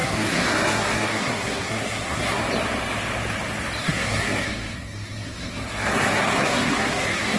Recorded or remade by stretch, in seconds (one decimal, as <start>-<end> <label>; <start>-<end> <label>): 0.0-2.4 remade; 2.4-3.8 recorded; 3.8-7.4 remade